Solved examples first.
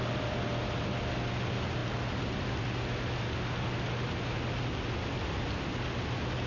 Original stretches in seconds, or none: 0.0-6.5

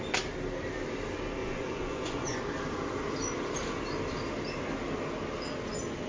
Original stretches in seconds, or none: 0.0-1.4; 2.4-6.1

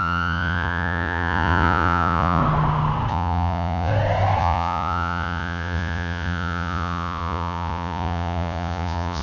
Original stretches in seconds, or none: 2.4-3.1; 3.9-4.4

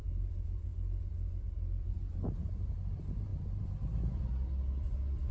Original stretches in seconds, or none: 0.0-5.3